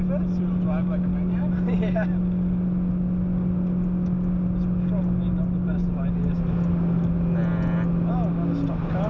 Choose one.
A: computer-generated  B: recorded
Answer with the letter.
B